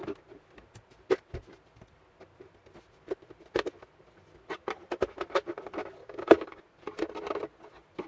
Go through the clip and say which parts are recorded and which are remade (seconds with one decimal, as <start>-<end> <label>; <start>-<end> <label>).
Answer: 0.0-6.0 recorded; 6.0-6.6 remade; 6.6-8.1 recorded